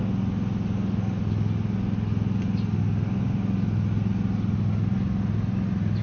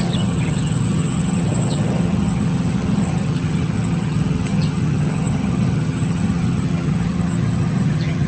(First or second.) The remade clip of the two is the second